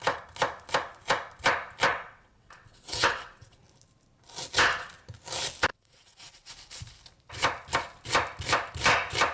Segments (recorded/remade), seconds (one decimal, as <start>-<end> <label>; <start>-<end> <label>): 0.0-1.9 recorded; 1.9-3.6 remade; 3.6-5.7 recorded; 5.7-6.5 remade; 6.5-9.3 recorded